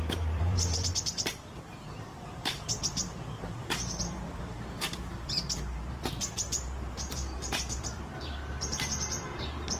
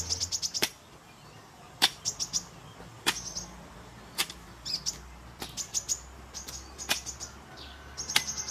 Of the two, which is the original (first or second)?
second